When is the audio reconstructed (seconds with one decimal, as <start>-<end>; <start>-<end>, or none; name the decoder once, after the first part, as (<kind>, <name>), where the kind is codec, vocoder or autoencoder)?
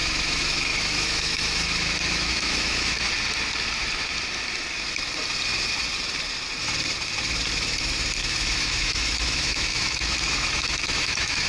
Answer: 0.0-3.1 (autoencoder, DAC-VAE); 8.2-11.5